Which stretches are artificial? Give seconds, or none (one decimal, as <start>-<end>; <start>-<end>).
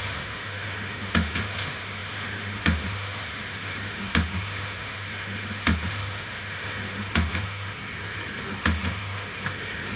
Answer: 0.0-7.8; 8.6-10.0